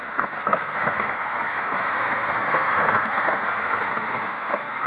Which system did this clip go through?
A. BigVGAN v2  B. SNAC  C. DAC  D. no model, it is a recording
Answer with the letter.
B